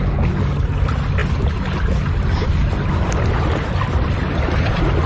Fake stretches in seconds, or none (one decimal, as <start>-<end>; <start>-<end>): none